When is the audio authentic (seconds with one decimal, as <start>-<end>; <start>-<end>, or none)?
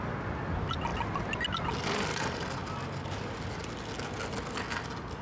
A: 0.0-5.2